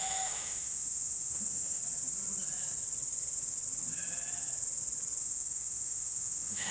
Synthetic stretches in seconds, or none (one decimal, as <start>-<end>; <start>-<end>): 0.0-1.8; 5.2-6.7